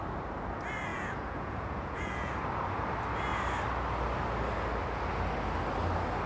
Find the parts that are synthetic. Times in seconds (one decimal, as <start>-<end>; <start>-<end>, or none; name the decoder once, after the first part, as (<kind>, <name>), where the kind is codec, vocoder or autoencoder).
0.9-2.3 (vocoder, Vocos)